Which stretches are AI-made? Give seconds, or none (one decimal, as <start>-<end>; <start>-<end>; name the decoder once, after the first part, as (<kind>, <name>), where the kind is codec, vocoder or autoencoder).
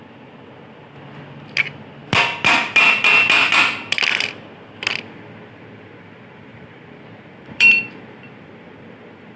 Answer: 6.5-8.0 (vocoder, BigVGAN v2)